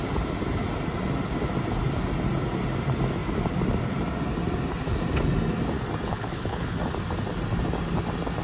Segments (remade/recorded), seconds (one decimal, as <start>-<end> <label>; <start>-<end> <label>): 0.0-6.1 recorded; 6.1-6.8 remade; 6.8-8.4 recorded